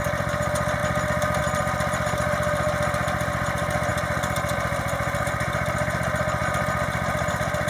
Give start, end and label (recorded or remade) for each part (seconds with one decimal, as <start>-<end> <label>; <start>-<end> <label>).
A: 0.0-0.8 remade; 0.8-1.4 recorded; 1.4-3.9 remade; 3.9-5.2 recorded; 5.2-6.4 remade; 6.4-7.3 recorded; 7.3-7.7 remade